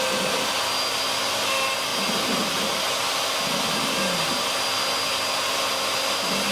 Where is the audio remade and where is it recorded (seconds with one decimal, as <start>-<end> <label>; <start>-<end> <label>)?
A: 0.0-6.5 recorded